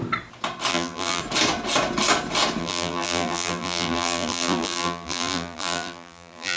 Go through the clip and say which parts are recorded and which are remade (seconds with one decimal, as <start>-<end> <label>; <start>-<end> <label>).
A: 0.0-0.7 recorded; 0.7-1.2 remade; 1.2-2.6 recorded; 2.6-6.6 remade